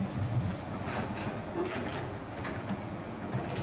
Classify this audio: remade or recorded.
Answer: remade